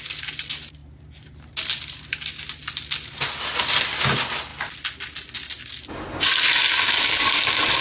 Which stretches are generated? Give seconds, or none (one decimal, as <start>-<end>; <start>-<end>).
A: none